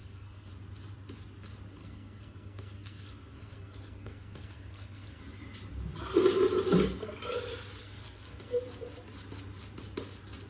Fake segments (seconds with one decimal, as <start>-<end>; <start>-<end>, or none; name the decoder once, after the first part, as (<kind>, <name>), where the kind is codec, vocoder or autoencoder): 0.0-0.5 (codec, SNAC); 1.8-5.2; 7.8-8.6